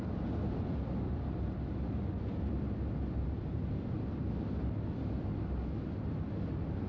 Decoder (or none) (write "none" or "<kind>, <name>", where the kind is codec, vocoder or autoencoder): none